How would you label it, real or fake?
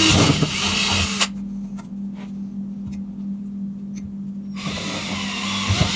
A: real